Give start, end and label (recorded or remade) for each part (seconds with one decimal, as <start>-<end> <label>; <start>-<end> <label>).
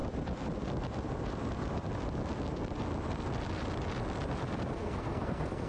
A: 0.0-4.8 recorded; 4.8-5.7 remade